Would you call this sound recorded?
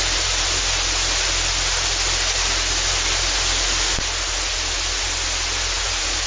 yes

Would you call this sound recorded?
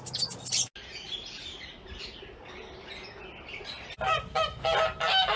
yes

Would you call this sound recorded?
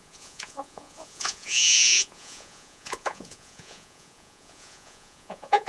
no